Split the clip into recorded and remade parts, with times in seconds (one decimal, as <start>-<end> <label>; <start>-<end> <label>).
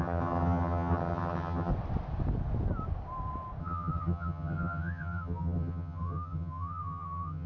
0.0-1.7 remade; 1.7-3.6 recorded; 3.6-7.5 remade